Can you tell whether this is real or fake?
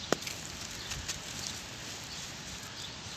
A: real